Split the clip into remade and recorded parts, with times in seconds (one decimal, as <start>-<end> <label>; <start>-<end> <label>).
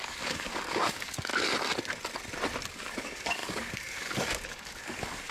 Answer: 0.0-1.3 remade; 1.3-2.7 recorded; 2.7-5.3 remade